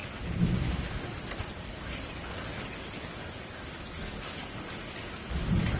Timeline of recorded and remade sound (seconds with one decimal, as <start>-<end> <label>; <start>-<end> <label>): 0.0-5.8 recorded